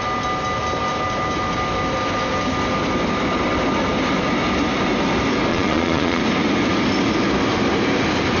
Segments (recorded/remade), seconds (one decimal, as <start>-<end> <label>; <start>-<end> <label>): 0.0-5.5 recorded; 5.5-6.2 remade; 6.2-8.4 recorded